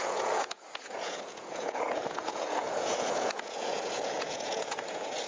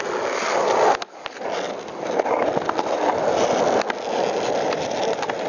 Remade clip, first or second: first